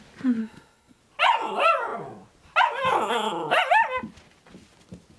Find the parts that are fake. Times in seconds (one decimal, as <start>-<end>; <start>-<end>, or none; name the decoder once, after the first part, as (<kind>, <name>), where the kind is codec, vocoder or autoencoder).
0.4-1.0 (codec, SNAC)